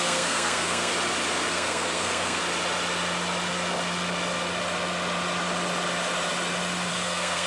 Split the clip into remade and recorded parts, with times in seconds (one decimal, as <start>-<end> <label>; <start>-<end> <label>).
0.0-0.9 remade; 0.9-1.5 recorded; 1.5-2.4 remade; 2.4-6.9 recorded; 6.9-7.5 remade